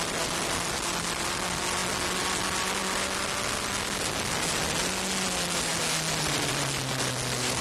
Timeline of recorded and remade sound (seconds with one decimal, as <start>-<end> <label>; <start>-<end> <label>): 0.0-7.6 recorded